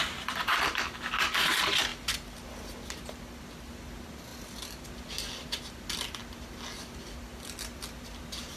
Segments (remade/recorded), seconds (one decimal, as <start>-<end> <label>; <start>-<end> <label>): 0.0-8.6 recorded